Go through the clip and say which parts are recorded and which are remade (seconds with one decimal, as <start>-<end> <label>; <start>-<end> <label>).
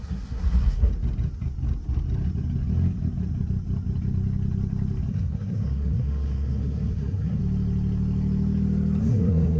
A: 0.0-0.9 remade; 0.9-5.1 recorded; 5.1-7.4 remade; 7.4-9.0 recorded; 9.0-9.6 remade